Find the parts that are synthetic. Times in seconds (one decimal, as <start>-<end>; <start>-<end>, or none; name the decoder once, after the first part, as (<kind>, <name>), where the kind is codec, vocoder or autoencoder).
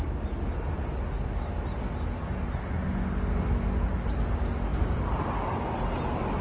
none